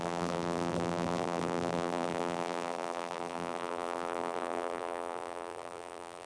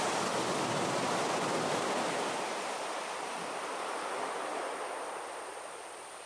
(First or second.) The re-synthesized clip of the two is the first